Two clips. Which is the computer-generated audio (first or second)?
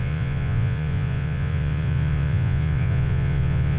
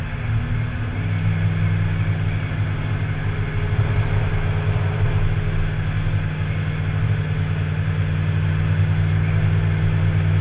first